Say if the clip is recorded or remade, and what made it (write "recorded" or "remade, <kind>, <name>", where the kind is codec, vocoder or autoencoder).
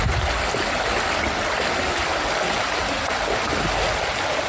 recorded